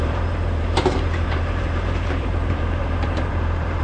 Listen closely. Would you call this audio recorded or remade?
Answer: remade